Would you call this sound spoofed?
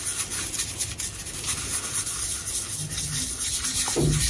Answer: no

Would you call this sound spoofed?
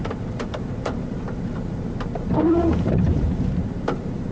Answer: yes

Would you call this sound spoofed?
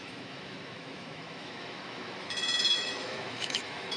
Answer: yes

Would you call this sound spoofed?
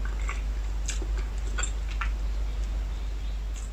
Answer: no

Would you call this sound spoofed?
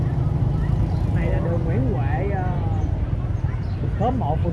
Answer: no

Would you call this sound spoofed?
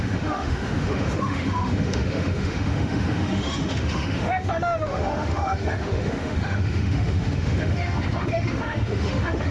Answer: yes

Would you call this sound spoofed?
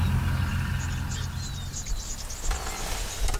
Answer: no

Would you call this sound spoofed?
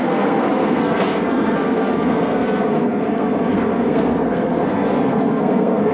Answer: yes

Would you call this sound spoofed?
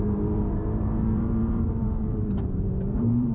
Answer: yes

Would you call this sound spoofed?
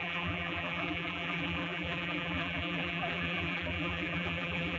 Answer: yes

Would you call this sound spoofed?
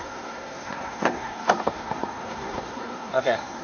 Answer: yes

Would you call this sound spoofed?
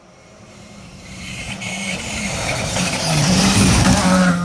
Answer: yes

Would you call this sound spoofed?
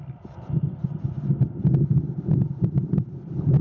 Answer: no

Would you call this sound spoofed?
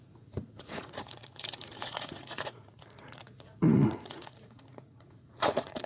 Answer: yes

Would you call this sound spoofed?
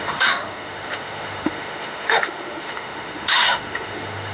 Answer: yes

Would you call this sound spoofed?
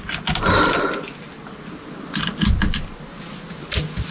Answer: no